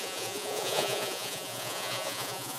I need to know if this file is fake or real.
fake